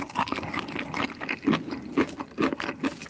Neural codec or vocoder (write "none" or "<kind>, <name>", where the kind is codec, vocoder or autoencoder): none